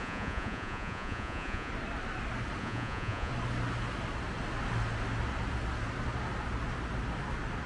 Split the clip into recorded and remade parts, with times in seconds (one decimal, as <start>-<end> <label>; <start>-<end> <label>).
0.0-1.7 remade; 1.7-2.6 recorded; 2.6-3.3 remade; 3.3-7.7 recorded